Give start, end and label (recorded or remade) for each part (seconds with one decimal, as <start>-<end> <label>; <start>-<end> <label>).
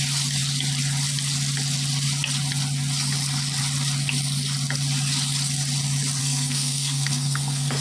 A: 0.0-6.2 recorded; 6.2-7.8 remade